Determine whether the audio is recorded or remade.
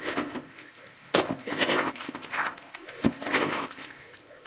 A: remade